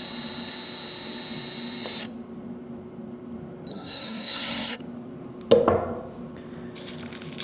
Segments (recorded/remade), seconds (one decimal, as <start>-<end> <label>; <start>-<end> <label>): 0.0-3.7 recorded; 3.7-4.8 remade; 4.8-7.4 recorded